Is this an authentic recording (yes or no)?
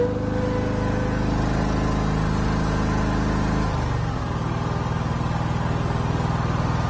yes